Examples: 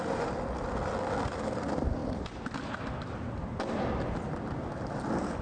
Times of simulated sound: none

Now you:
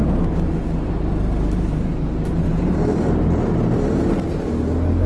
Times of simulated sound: none

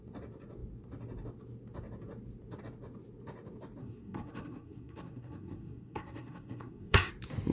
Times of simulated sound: 3.8-7.1 (codec, SNAC)

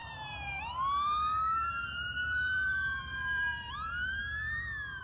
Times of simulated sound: 0.0-4.2 (vocoder, BigVGAN v2)